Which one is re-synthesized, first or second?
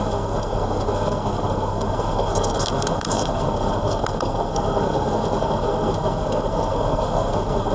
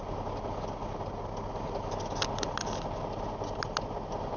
first